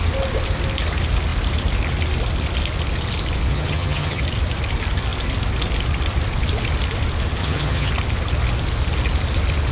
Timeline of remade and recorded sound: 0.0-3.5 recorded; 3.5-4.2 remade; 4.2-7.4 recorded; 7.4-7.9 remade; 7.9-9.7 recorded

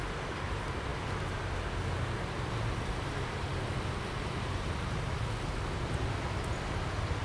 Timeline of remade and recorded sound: 0.0-7.2 recorded

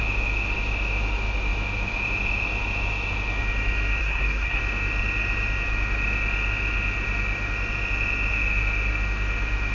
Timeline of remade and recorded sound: 0.0-4.0 recorded; 4.0-4.6 remade; 4.6-9.7 recorded